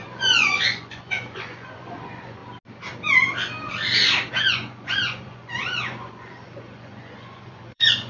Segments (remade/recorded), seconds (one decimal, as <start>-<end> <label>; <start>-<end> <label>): 0.0-2.4 remade; 2.4-4.3 recorded; 4.3-8.1 remade